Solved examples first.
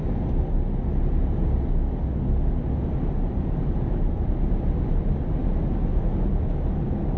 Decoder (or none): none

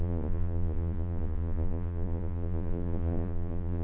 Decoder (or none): vocoder, Vocos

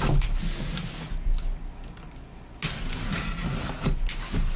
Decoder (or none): none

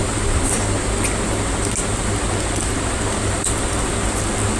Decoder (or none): none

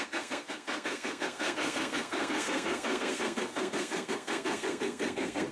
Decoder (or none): codec, SNAC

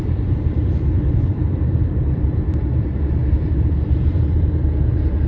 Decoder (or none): vocoder, BigVGAN v2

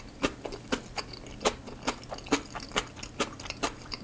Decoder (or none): none